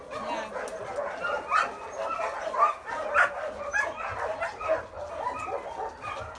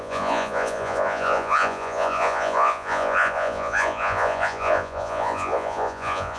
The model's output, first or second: second